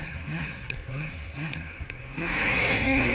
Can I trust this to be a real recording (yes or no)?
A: no